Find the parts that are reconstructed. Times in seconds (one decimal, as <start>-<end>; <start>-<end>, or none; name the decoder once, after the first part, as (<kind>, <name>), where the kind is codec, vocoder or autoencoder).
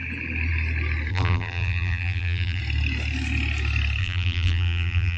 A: 1.1-2.6 (vocoder, BigVGAN v2); 4.0-5.2